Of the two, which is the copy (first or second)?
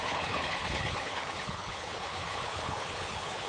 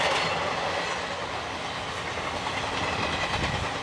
first